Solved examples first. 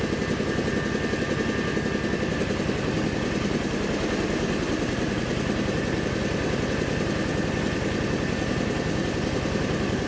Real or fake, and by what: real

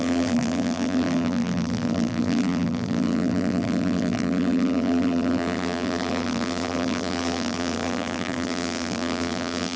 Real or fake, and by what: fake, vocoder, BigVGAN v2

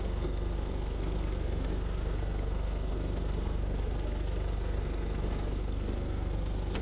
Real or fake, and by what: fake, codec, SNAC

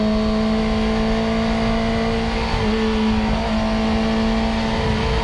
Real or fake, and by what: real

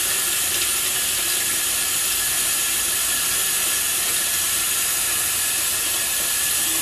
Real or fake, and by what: real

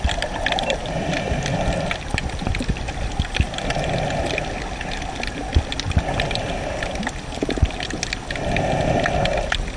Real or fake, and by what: real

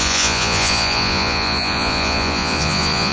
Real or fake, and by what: fake, vocoder, Vocos